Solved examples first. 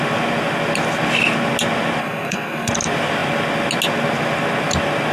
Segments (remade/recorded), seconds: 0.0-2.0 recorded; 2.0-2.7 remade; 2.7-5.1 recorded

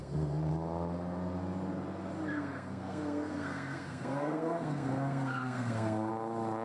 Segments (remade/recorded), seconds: 0.0-0.5 remade; 0.5-2.3 recorded; 2.3-6.1 remade; 6.1-6.6 recorded

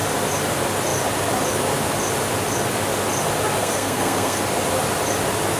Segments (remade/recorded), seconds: 0.0-3.6 recorded; 3.6-4.4 remade; 4.4-5.6 recorded

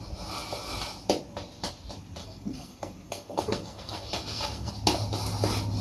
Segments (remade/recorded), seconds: 0.0-2.2 recorded; 2.2-4.7 remade; 4.7-5.8 recorded

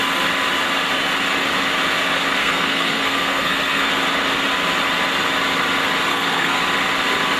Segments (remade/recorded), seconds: 0.0-2.4 recorded; 2.4-3.9 remade; 3.9-6.1 recorded; 6.1-6.6 remade; 6.6-7.4 recorded

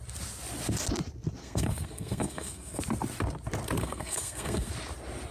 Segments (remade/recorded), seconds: 0.0-1.4 recorded; 1.4-2.8 remade; 2.8-3.8 recorded; 3.8-4.7 remade; 4.7-5.3 recorded

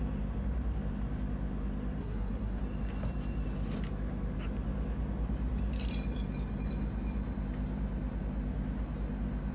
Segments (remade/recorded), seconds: 0.0-2.0 recorded; 2.0-2.6 remade; 2.6-9.5 recorded

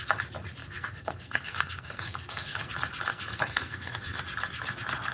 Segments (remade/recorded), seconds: 0.0-0.6 recorded; 0.6-2.7 remade; 2.7-3.1 recorded; 3.1-4.2 remade; 4.2-5.1 recorded